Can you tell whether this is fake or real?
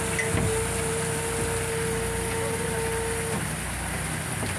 real